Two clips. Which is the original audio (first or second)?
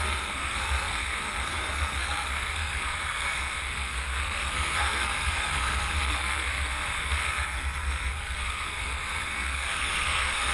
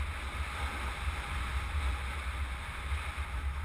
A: second